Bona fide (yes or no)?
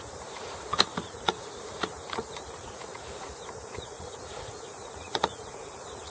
no